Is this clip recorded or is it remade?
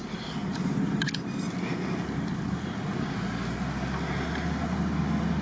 recorded